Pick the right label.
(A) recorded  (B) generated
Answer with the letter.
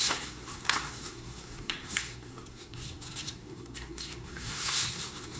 B